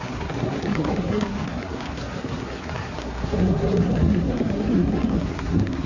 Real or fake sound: fake